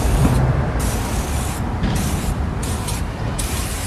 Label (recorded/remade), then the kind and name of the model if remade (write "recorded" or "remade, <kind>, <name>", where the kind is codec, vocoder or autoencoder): remade, vocoder, BigVGAN v2